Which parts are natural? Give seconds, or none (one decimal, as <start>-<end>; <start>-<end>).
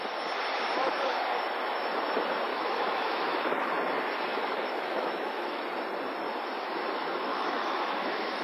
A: 0.0-2.5; 3.7-4.3; 5.6-7.3